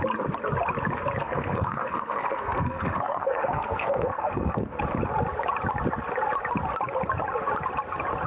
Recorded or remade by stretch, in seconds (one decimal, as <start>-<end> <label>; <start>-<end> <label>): 0.0-1.2 recorded; 1.2-4.8 remade; 4.8-8.3 recorded